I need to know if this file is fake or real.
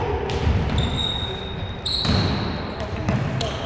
real